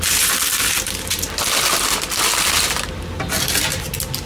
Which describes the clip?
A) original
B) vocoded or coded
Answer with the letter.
A